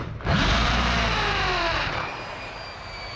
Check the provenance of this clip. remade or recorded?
remade